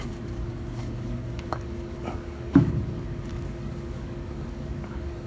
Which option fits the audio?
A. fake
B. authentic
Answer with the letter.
A